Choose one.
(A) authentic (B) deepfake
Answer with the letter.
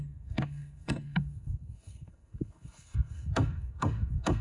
B